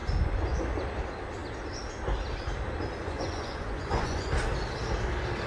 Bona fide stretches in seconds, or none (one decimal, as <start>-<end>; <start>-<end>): 0.6-3.0; 4.3-5.5